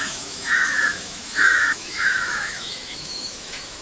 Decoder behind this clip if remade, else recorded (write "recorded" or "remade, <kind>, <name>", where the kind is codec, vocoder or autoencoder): remade, autoencoder, DAC-VAE